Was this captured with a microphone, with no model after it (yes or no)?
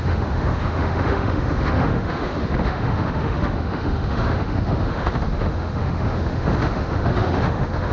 no